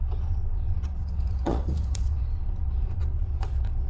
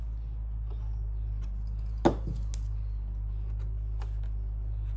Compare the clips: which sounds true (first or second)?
second